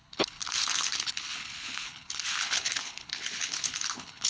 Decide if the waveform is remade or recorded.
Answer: remade